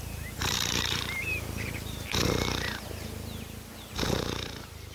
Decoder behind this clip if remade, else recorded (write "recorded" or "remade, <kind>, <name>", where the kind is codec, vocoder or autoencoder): remade, vocoder, BigVGAN v2